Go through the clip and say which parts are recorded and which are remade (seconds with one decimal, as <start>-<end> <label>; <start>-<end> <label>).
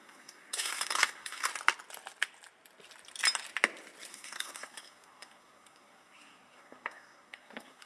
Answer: 0.0-1.5 remade; 1.5-4.1 recorded; 4.1-7.9 remade